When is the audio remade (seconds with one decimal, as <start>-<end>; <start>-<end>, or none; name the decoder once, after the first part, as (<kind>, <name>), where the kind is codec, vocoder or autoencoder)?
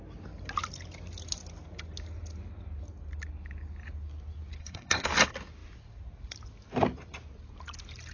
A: 4.6-5.1 (codec, SNAC)